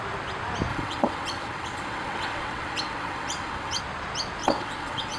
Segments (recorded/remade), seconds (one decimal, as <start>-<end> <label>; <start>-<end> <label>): 0.0-0.7 recorded; 0.7-3.8 remade; 3.8-4.4 recorded; 4.4-5.2 remade